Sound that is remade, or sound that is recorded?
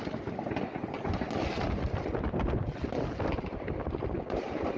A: recorded